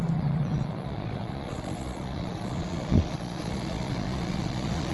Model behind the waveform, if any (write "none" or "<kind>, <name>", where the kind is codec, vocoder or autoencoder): vocoder, Vocos